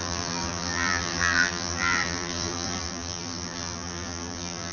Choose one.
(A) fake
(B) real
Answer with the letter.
A